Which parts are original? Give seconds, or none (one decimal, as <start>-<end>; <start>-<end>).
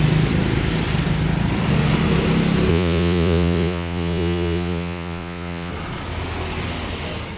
0.0-2.7; 5.7-7.4